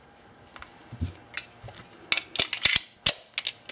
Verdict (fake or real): real